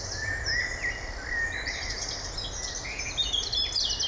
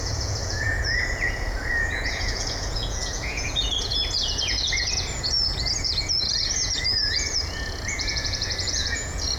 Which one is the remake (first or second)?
second